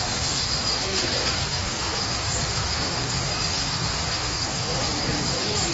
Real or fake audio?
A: fake